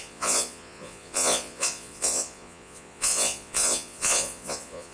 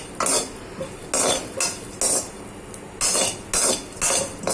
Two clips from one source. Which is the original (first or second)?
second